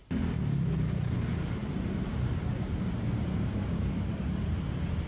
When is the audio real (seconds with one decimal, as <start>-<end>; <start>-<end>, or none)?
0.0-1.6; 4.5-5.1